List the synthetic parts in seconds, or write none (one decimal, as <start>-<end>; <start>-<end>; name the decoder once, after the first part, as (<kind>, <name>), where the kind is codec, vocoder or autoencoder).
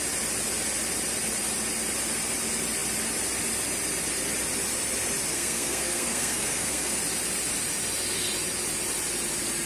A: 5.3-7.0 (codec, SNAC)